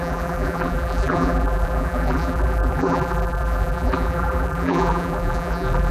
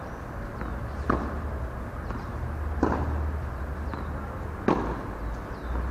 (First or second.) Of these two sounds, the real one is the second